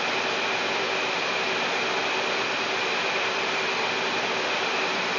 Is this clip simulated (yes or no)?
no